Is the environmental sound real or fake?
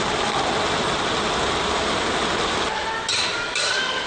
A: real